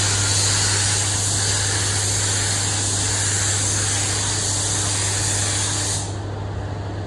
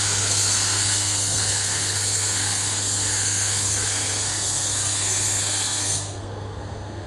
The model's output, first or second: second